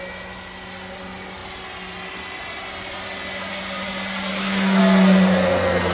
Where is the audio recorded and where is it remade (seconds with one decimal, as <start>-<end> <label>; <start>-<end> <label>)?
0.0-4.3 recorded; 4.3-4.8 remade; 4.8-5.9 recorded